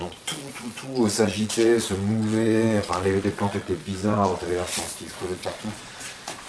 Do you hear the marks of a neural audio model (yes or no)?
yes